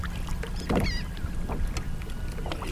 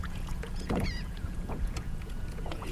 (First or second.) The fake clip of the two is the second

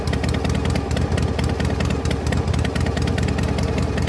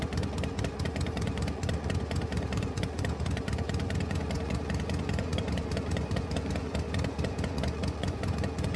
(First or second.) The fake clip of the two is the second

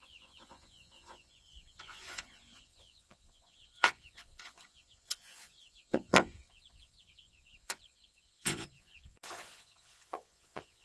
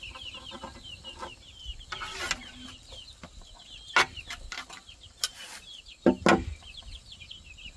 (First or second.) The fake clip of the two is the first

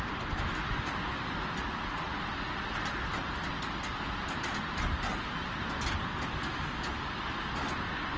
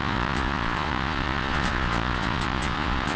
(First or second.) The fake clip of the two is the second